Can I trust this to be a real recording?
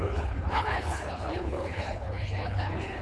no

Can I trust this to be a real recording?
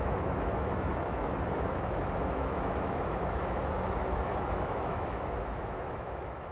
no